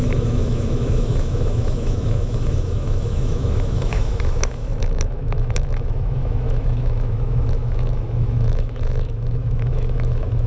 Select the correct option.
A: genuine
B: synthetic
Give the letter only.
B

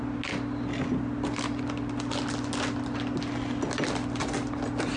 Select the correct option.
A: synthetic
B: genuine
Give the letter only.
B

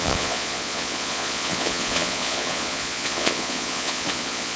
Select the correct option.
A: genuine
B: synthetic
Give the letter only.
B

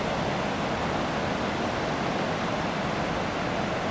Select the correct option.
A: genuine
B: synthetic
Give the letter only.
A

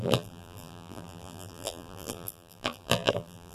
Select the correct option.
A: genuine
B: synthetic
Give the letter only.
B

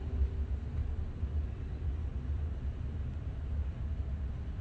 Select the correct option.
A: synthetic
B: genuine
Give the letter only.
B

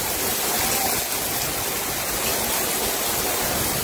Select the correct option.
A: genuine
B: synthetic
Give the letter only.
A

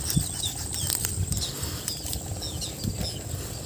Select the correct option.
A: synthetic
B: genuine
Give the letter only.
B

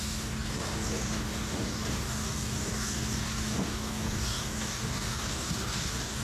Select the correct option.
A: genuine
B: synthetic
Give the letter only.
B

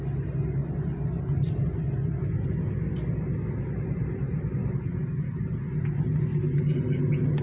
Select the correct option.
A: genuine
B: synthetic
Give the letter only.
A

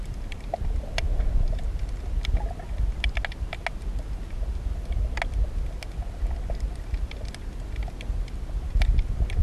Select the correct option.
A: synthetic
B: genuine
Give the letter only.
B